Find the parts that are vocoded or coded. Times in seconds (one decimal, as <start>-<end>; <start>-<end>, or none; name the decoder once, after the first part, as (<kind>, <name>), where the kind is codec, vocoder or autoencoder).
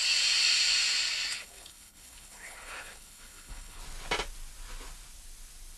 1.3-3.8 (codec, HILCodec)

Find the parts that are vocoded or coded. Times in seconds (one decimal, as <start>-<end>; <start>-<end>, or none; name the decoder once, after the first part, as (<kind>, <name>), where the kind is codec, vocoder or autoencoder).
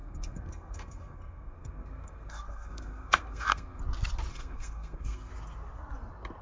0.0-3.8 (codec, SNAC); 4.3-5.3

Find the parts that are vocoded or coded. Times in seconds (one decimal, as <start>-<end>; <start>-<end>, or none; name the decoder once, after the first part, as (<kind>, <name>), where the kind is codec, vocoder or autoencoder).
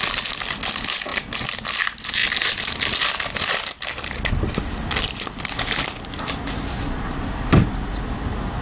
none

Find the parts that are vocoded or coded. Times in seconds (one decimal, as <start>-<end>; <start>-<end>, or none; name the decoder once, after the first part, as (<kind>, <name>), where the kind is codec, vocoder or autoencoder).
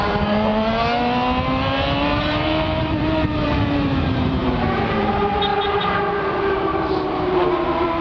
0.0-0.5 (vocoder, BigVGAN v2); 2.2-8.0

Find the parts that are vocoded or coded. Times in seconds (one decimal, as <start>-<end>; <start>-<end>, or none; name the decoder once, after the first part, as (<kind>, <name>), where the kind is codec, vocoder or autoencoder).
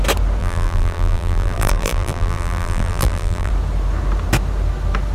0.4-3.5 (vocoder, BigVGAN v2)